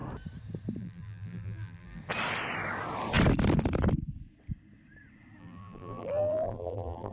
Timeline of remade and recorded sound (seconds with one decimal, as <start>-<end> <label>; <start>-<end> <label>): 0.0-0.8 recorded; 0.8-2.0 remade; 2.0-5.4 recorded; 5.4-7.1 remade